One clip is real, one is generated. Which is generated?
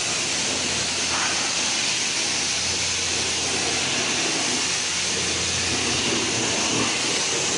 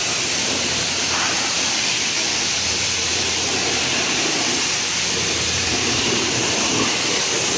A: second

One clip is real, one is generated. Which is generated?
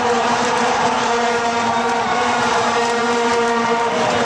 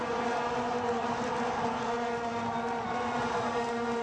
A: first